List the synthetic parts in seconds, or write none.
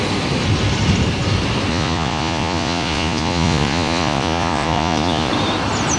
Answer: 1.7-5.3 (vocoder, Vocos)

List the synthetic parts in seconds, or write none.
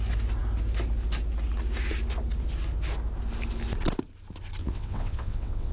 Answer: 4.6-5.7 (vocoder, WaveNeXt)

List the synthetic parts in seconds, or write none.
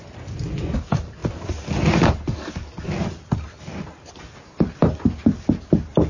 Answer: none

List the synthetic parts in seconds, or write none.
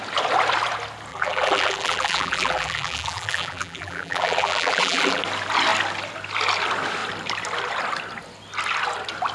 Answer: 1.1-5.2 (vocoder, BigVGAN v2)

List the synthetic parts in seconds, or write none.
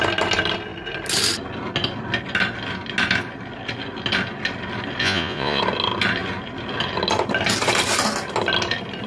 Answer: 5.0-5.6 (vocoder, Vocos)